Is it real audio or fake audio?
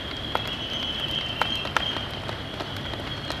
real